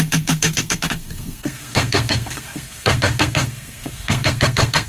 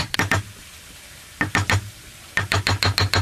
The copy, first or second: first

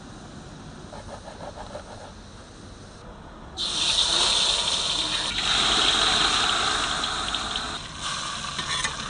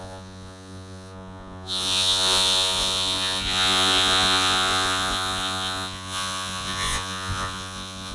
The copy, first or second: second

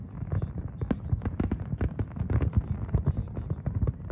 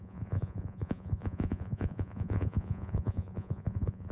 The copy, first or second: second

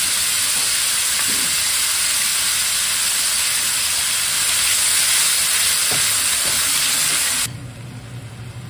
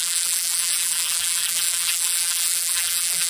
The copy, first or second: second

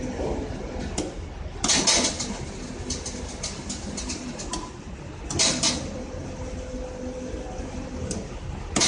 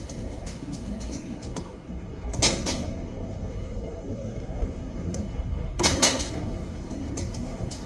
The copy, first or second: second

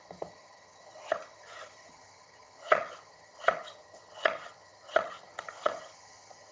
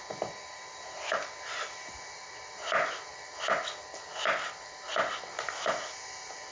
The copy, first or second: first